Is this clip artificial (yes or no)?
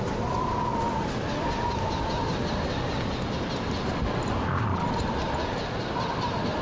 no